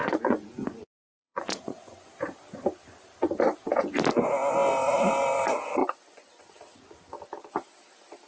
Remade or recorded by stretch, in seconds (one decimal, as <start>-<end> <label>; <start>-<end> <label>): 0.0-2.1 remade; 2.1-5.8 recorded; 5.8-6.5 remade; 6.5-8.3 recorded